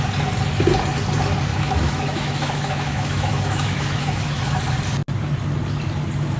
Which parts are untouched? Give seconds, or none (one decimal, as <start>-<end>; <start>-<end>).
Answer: 0.0-1.5; 4.6-6.4